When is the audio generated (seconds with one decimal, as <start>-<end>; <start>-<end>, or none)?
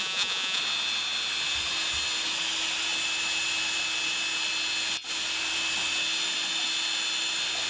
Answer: 0.0-0.6